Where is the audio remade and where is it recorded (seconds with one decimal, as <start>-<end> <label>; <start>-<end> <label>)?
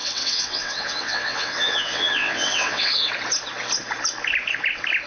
0.0-3.1 remade; 3.1-5.1 recorded